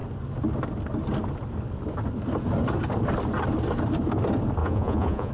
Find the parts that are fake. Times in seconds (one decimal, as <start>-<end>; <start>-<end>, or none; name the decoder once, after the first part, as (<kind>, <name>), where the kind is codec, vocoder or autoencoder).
4.6-5.3 (vocoder, Vocos)